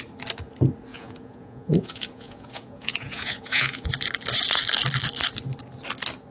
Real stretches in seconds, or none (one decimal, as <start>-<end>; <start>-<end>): 0.0-0.9; 3.9-6.3